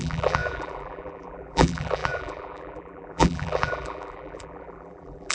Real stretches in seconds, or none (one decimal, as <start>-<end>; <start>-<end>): none